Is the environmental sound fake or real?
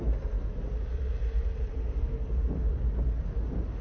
real